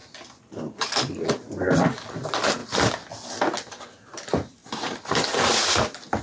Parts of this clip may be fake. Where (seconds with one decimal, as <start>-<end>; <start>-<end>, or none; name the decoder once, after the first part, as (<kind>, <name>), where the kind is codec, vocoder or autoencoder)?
none